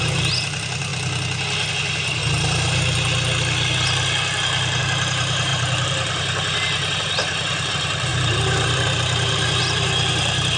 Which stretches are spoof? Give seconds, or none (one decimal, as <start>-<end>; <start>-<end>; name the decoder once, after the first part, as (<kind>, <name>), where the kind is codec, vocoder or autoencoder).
0.0-0.9 (vocoder, BigVGAN v2); 1.7-2.2; 4.8-10.6